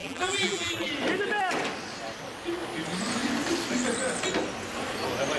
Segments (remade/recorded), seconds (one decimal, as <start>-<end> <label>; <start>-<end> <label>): 0.0-0.9 remade; 0.9-5.4 recorded